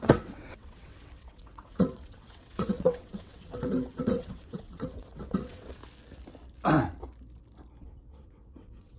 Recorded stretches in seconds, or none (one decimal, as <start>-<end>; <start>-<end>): 5.8-7.8